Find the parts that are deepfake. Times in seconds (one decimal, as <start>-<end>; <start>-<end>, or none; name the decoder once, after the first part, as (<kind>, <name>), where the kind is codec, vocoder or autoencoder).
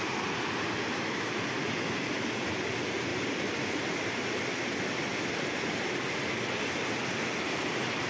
none